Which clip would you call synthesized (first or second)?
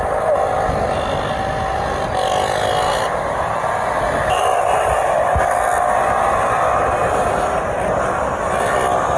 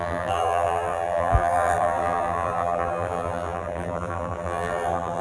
second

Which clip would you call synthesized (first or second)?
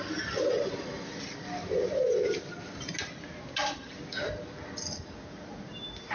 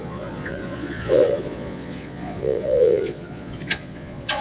second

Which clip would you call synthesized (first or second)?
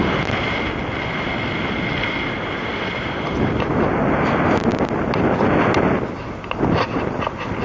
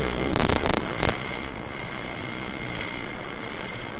second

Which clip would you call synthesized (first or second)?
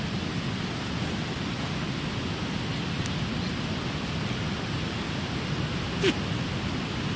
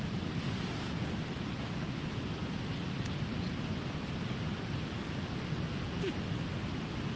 second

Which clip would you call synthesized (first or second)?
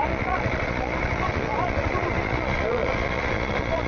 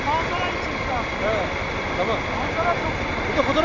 first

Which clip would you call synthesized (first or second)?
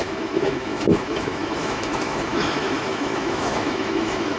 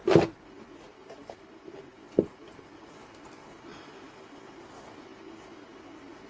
first